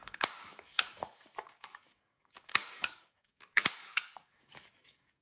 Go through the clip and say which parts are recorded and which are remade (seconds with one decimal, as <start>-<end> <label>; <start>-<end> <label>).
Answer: 0.0-5.2 remade